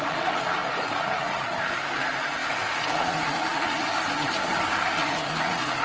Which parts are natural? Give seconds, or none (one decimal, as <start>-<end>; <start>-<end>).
0.0-5.8